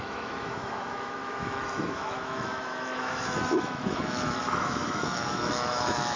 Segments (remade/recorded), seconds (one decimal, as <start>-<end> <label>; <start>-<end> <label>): 0.0-6.2 remade